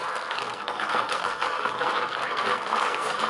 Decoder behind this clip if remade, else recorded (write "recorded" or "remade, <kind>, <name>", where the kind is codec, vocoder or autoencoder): remade, codec, SNAC